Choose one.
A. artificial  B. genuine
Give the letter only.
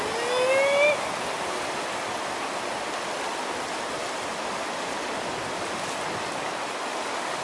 B